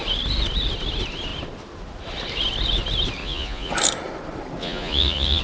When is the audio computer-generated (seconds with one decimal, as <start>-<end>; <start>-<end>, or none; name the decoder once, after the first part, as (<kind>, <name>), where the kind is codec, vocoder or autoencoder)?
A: 3.2-3.7 (vocoder, Vocos); 4.6-5.4